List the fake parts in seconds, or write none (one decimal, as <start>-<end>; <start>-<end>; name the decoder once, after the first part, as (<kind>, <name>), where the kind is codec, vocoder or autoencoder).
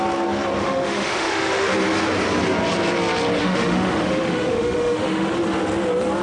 0.6-1.7 (autoencoder, DAC-VAE); 3.4-5.3